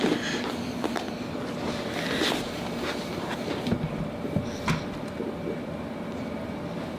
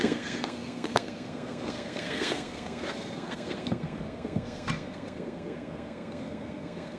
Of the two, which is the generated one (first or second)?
second